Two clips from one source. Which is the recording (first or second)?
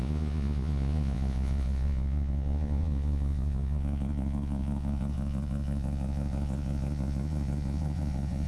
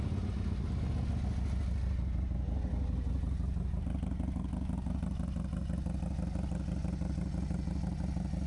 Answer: second